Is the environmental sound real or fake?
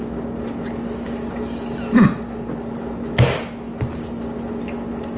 real